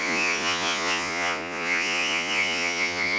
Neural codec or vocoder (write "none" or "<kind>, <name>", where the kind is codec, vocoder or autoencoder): vocoder, Vocos